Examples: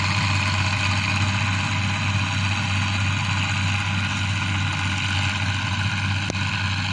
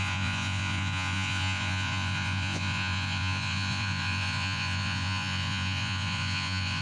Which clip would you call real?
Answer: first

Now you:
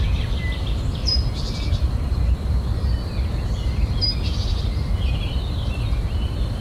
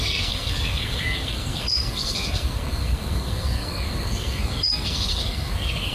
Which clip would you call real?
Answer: first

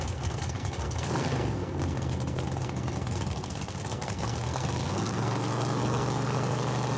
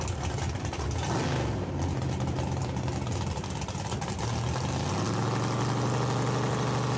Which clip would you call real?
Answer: second